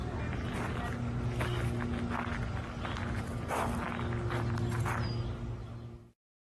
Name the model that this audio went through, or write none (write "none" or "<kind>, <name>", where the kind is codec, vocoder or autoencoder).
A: none